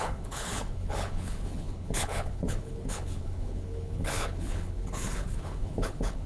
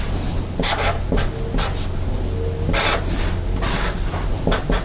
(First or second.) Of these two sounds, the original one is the second